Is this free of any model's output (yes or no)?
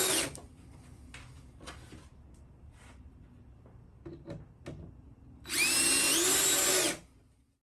yes